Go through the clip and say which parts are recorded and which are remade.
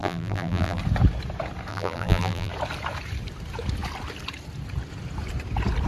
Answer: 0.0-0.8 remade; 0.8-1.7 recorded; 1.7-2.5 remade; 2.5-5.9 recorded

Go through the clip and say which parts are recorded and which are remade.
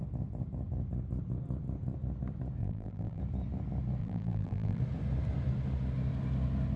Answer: 0.0-2.6 recorded; 2.6-3.2 remade; 3.2-4.0 recorded; 4.0-4.8 remade; 4.8-6.8 recorded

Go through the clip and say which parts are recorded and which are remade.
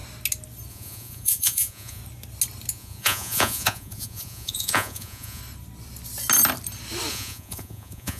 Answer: 0.0-0.7 recorded; 0.7-2.0 remade; 2.0-2.7 recorded; 2.7-5.4 remade; 5.4-7.1 recorded; 7.1-8.2 remade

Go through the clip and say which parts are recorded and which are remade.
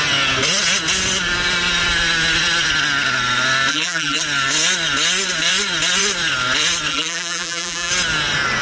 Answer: 0.0-3.7 recorded; 3.7-4.2 remade; 4.2-6.9 recorded; 6.9-7.9 remade; 7.9-8.6 recorded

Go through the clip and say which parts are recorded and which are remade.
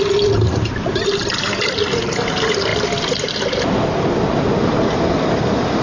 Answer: 0.0-2.7 recorded; 2.7-4.0 remade; 4.0-5.8 recorded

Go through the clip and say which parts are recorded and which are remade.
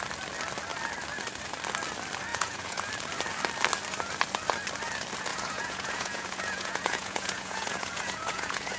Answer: 0.0-2.3 recorded; 2.3-2.9 remade; 2.9-5.3 recorded; 5.3-8.8 remade